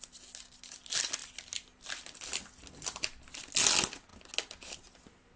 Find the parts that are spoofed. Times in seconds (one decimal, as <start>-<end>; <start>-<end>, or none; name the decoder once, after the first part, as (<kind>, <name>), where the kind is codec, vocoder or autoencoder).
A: none